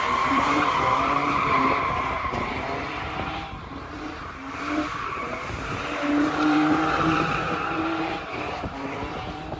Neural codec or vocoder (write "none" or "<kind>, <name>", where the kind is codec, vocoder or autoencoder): vocoder, BigVGAN v2